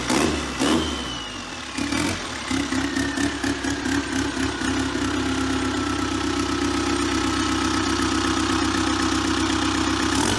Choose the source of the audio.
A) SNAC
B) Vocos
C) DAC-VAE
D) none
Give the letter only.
D